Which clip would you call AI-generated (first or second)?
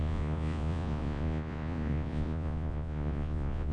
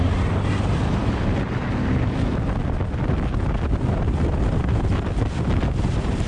first